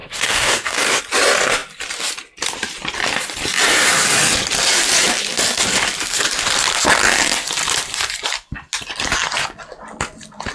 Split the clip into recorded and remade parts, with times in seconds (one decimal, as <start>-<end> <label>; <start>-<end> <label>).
0.0-1.0 remade; 1.0-10.5 recorded